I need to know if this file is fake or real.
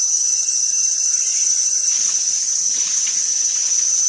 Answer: fake